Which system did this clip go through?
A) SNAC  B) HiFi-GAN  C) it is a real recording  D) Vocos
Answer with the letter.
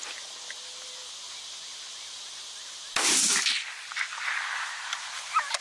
C